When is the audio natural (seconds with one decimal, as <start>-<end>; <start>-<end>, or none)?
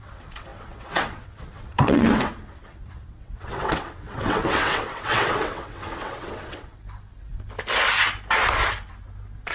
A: 6.8-9.5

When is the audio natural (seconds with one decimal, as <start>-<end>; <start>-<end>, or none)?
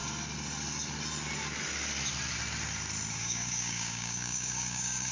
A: 0.0-3.1